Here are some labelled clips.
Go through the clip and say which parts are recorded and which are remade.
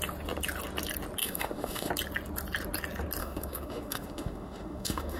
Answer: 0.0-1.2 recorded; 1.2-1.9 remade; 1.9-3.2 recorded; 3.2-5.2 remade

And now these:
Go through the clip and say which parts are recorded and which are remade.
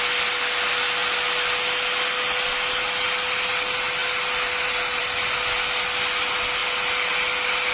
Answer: 0.0-7.7 recorded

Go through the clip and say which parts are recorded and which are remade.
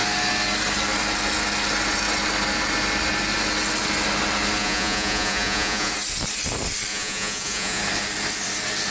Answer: 0.0-4.6 recorded; 4.6-5.9 remade; 5.9-6.9 recorded; 6.9-7.8 remade; 7.8-8.9 recorded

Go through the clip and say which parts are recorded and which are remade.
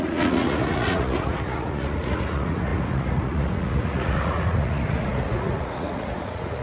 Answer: 0.0-6.6 remade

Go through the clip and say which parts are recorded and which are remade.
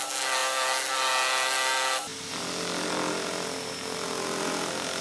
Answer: 0.0-5.0 recorded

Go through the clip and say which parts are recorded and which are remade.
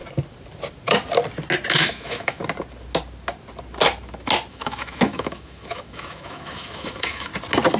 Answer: 0.0-1.7 recorded; 1.7-2.4 remade; 2.4-4.5 recorded; 4.5-7.3 remade; 7.3-7.8 recorded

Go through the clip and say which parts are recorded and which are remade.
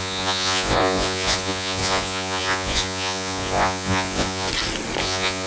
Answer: 0.0-4.5 remade; 4.5-5.0 recorded; 5.0-5.5 remade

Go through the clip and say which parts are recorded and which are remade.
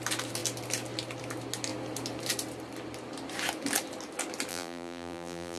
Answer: 0.0-4.5 recorded; 4.5-5.6 remade